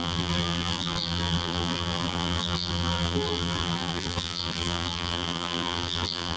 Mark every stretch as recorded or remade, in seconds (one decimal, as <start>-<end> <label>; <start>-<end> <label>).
0.0-6.4 remade